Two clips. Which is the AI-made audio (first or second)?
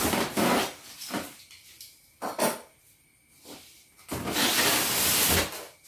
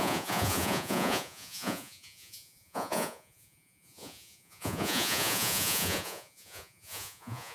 second